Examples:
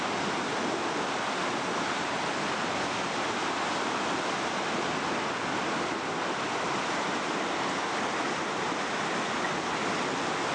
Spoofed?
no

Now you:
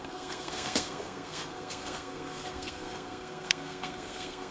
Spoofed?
yes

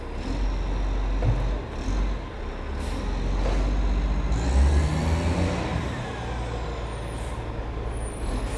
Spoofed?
no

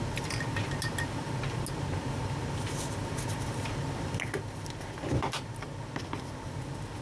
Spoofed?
no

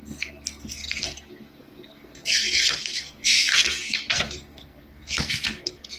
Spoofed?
yes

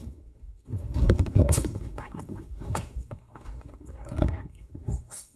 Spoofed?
yes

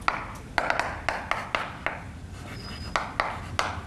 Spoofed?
no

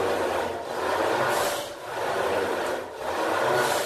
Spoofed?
no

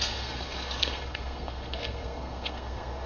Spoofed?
yes